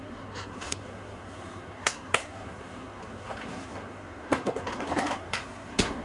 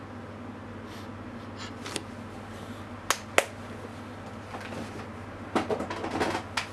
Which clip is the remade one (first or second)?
first